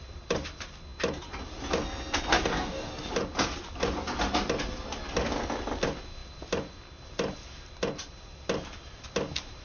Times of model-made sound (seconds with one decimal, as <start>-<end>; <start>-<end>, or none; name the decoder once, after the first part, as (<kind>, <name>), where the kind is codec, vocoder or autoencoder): 2.3-2.9 (codec, DAC)